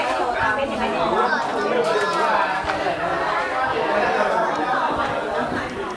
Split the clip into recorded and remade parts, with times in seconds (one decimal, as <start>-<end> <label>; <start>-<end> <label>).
0.0-6.0 recorded